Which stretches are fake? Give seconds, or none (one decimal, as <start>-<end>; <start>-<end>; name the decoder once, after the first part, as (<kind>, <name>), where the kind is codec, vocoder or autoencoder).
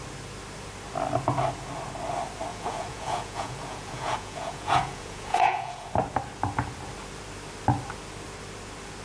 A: 2.5-5.9 (vocoder, Vocos)